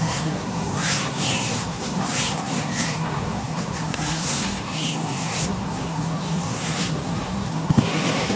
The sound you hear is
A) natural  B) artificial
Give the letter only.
B